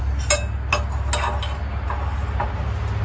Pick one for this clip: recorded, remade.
recorded